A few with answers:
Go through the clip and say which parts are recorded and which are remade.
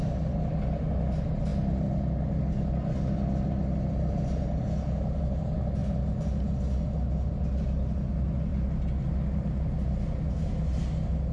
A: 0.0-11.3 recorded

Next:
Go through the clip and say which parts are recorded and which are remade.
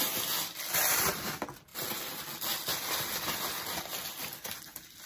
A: 0.0-5.1 recorded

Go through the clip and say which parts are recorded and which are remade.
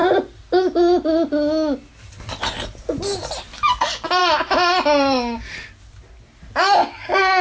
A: 0.0-7.4 recorded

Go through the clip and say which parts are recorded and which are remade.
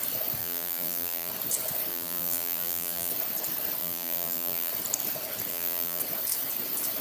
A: 0.0-0.4 recorded; 0.4-1.3 remade; 1.3-1.9 recorded; 1.9-3.1 remade; 3.1-3.8 recorded; 3.8-4.7 remade; 4.7-5.5 recorded; 5.5-6.0 remade; 6.0-7.0 recorded